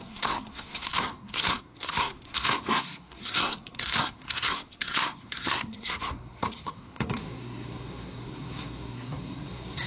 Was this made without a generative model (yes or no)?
no